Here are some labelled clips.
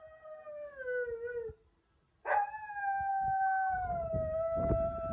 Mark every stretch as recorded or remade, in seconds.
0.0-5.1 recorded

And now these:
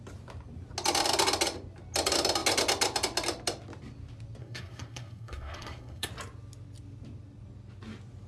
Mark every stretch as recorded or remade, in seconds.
0.0-4.4 recorded; 4.4-6.1 remade; 6.1-8.3 recorded

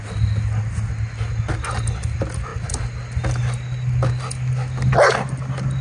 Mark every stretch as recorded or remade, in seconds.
0.0-5.8 recorded